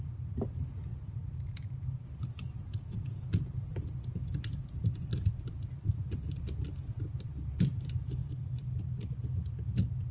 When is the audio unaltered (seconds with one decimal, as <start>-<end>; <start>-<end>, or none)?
0.0-10.1